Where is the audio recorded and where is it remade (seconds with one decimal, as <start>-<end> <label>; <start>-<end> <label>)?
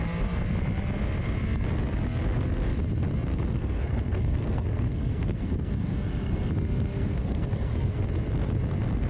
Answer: 0.0-3.3 recorded; 3.3-6.5 remade; 6.5-6.9 recorded; 6.9-8.0 remade; 8.0-9.1 recorded